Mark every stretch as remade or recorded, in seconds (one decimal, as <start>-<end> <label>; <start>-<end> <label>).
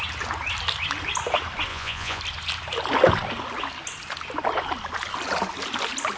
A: 0.0-1.7 recorded; 1.7-2.2 remade; 2.2-6.2 recorded